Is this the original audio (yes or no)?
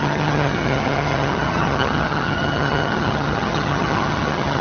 no